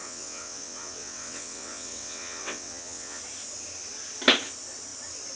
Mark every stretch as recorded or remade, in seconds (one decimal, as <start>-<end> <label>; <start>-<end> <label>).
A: 0.0-3.2 remade; 3.2-5.4 recorded